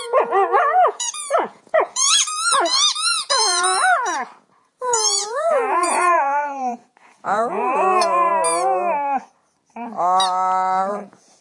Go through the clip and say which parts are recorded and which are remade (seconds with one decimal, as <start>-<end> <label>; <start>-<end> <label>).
0.0-8.3 remade; 8.3-10.9 recorded; 10.9-11.4 remade